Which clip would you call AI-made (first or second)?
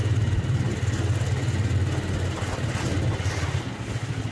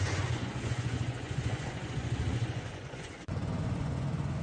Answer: second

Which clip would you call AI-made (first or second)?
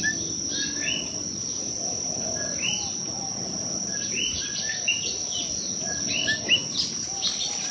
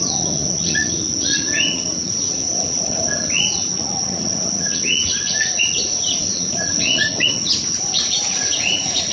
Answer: second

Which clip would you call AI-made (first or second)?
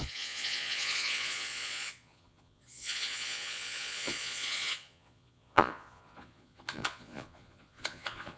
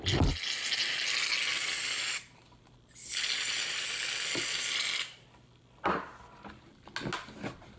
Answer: first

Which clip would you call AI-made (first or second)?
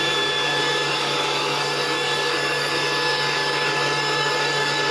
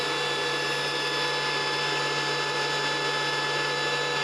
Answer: first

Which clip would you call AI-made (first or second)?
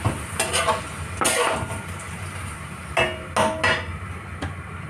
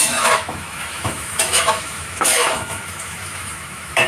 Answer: second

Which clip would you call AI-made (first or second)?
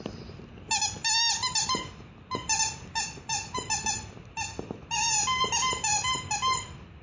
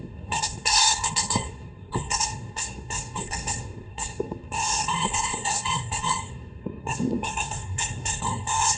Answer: second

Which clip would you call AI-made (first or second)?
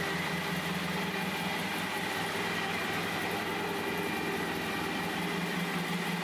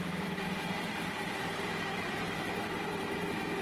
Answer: second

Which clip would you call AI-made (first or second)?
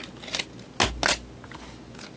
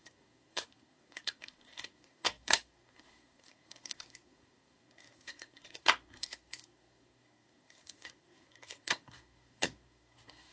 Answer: second